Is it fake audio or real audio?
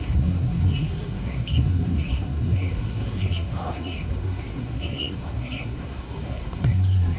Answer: fake